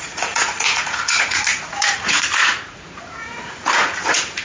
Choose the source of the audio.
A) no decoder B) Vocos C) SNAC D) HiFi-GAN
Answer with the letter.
B